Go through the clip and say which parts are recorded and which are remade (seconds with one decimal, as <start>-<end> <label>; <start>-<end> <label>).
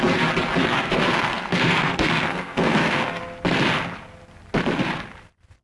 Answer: 0.0-0.6 recorded; 0.6-3.2 remade; 3.2-5.6 recorded